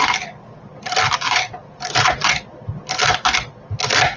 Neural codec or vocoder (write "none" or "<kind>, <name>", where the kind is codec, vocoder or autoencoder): none